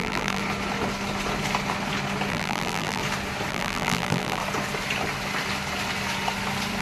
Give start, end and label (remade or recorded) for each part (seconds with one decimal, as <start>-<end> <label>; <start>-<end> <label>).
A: 0.0-0.4 remade; 0.4-2.3 recorded; 2.3-3.0 remade; 3.0-3.5 recorded; 3.5-4.4 remade; 4.4-6.8 recorded